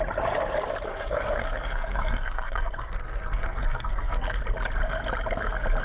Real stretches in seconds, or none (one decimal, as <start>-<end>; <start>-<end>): 0.0-0.9; 4.4-5.8